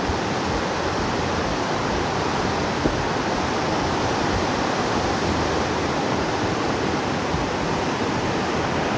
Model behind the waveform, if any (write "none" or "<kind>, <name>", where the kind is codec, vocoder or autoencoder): none